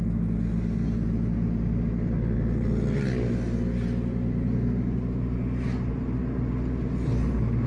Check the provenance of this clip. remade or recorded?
recorded